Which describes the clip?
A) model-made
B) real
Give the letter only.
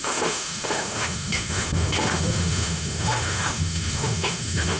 A